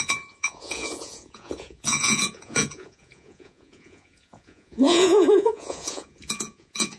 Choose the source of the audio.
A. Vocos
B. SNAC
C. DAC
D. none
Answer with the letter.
A